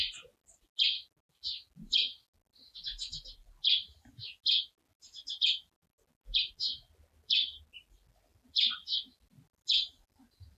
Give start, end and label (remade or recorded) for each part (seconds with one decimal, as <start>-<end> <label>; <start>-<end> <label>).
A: 0.0-10.6 recorded